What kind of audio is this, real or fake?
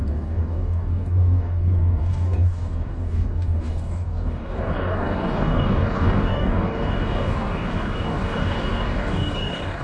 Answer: fake